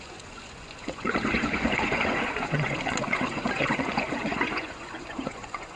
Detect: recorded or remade remade